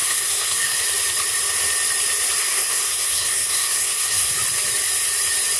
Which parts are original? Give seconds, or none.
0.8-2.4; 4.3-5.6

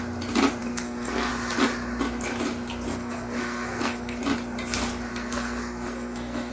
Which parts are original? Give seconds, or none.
0.0-0.6; 1.3-2.9; 4.2-5.1

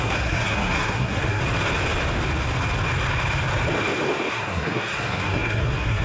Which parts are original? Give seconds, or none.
1.4-4.3

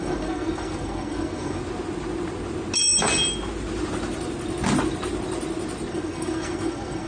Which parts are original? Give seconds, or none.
1.6-5.9

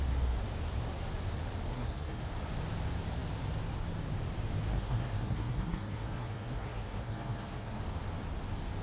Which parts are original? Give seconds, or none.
0.0-1.7; 2.2-4.7; 7.8-8.8

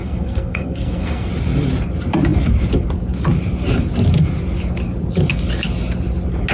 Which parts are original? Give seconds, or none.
1.3-6.5